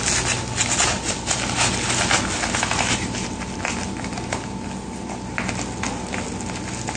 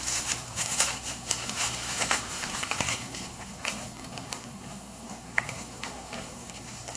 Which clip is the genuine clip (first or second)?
first